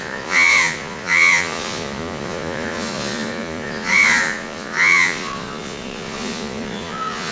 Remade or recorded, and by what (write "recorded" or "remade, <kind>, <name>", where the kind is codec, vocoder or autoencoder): remade, vocoder, Vocos